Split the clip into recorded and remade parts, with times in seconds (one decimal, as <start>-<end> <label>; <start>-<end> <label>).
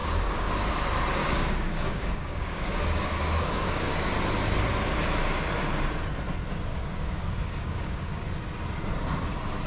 0.0-0.6 remade; 0.6-1.2 recorded; 1.2-4.1 remade; 4.1-6.7 recorded; 6.7-8.3 remade; 8.3-9.7 recorded